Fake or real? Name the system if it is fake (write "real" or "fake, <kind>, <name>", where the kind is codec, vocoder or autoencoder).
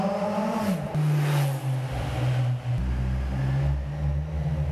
real